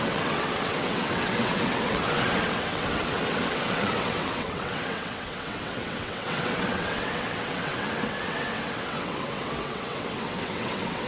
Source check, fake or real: fake